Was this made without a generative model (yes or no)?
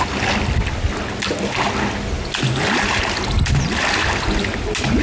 yes